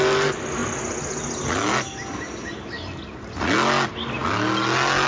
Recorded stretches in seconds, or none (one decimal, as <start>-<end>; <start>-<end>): 0.0-5.1